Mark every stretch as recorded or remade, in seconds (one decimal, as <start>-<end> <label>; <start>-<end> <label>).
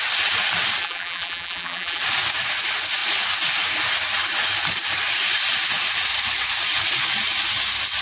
0.0-0.8 recorded; 0.8-2.0 remade; 2.0-8.0 recorded